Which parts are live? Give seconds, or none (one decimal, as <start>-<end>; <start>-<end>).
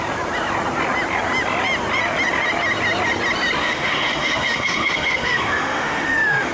0.0-3.6